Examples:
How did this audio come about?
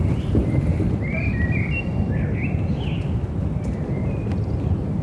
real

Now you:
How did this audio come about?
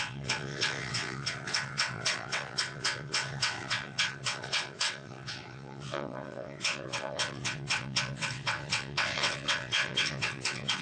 fake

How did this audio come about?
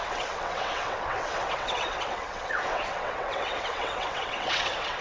fake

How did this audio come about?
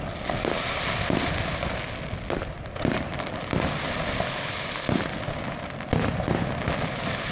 real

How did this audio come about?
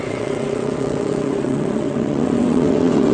fake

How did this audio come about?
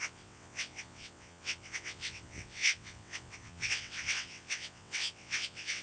fake